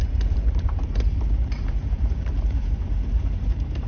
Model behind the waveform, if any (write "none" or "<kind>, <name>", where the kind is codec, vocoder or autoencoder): vocoder, BigVGAN v2